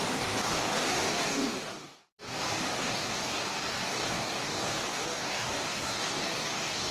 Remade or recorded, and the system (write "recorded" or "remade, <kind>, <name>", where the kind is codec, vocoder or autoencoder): remade, codec, DAC